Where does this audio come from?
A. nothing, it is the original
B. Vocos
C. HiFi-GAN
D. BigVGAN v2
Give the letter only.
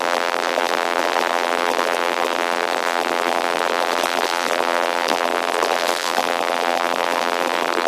D